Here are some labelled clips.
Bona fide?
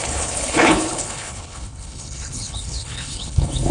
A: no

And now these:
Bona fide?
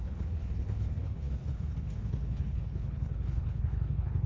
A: no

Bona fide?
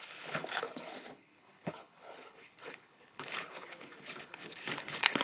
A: no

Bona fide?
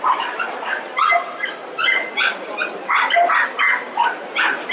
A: yes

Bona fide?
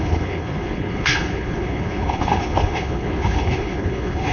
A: no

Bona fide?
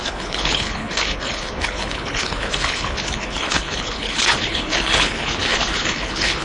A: no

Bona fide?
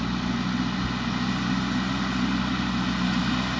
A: yes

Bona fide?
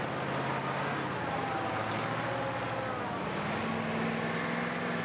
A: yes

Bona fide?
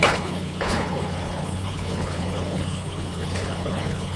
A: no